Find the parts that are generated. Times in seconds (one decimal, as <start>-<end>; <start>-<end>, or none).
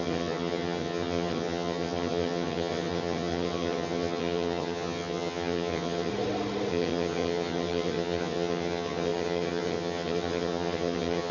0.0-6.1; 6.7-11.3